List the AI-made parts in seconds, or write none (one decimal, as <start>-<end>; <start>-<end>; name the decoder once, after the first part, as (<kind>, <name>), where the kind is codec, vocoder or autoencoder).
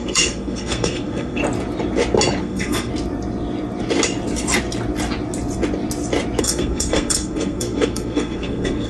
0.0-1.4 (codec, SNAC); 2.4-2.9; 6.4-8.9